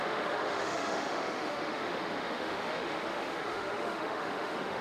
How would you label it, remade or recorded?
remade